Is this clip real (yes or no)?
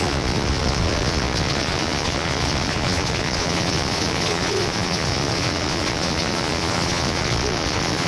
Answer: no